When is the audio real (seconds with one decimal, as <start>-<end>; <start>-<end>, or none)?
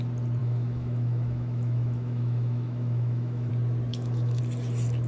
0.0-0.4; 3.5-3.9; 4.4-5.1